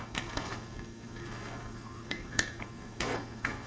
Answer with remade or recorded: remade